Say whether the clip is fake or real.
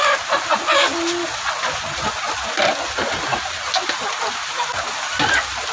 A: real